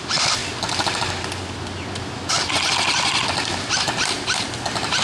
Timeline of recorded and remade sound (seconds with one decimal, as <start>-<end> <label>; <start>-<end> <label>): 0.0-0.4 remade; 0.4-2.7 recorded; 2.7-5.0 remade